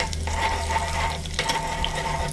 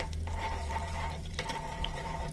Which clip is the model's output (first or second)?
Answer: second